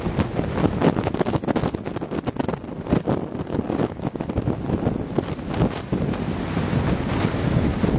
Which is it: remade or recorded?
recorded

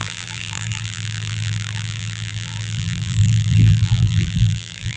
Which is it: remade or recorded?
remade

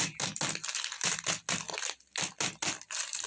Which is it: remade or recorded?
recorded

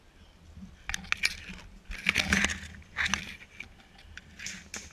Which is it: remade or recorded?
recorded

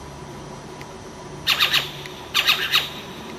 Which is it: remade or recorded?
remade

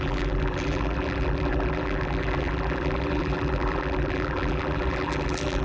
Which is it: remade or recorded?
remade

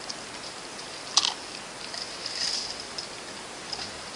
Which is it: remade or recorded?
recorded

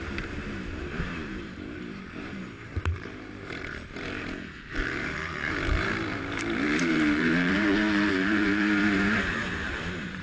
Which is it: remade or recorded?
remade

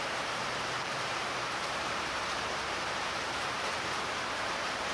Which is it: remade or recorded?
remade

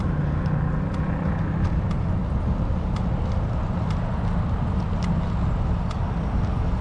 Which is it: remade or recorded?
recorded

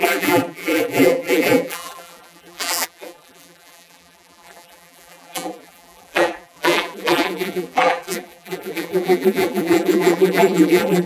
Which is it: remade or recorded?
remade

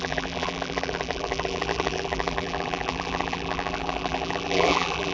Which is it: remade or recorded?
remade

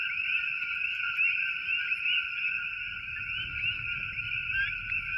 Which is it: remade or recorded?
recorded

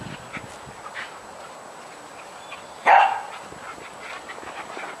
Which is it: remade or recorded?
recorded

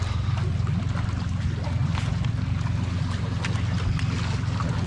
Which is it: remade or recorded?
recorded